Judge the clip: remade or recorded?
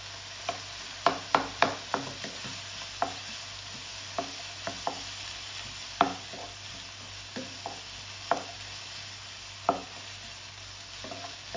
recorded